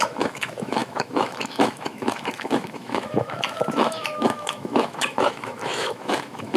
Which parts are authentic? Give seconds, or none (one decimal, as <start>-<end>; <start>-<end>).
none